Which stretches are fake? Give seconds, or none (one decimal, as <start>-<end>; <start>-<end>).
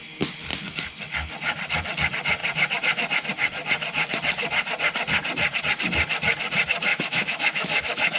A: 6.9-8.2